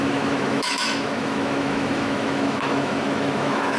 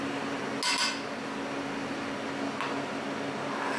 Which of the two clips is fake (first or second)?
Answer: first